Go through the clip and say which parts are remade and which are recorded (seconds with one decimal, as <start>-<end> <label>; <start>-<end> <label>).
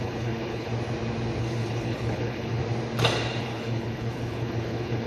0.0-0.7 remade; 0.7-1.4 recorded; 1.4-2.6 remade; 2.6-3.4 recorded; 3.4-5.1 remade